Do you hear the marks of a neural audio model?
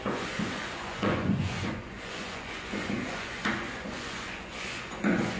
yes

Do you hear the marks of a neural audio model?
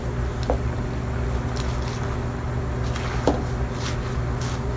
no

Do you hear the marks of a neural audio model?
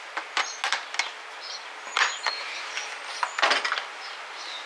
no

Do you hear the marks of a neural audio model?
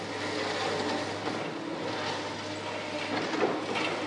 no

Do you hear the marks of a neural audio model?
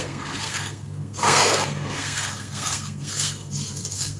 yes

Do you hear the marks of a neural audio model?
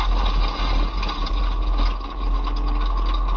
no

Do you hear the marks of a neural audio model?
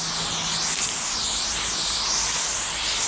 no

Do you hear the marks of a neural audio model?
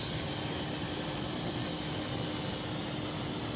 no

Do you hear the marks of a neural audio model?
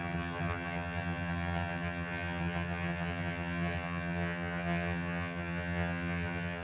yes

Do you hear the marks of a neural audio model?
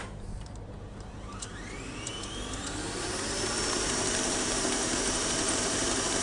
yes